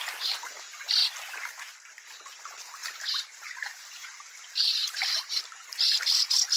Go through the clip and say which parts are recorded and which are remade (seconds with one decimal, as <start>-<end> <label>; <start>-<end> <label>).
0.0-2.8 recorded; 2.8-5.4 remade; 5.4-6.6 recorded